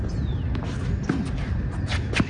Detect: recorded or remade recorded